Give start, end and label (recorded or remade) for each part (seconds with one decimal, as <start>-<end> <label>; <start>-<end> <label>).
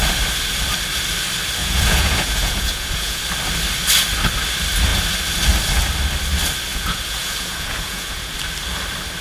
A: 0.0-1.6 recorded; 1.6-3.2 remade; 3.2-6.7 recorded; 6.7-8.3 remade; 8.3-9.2 recorded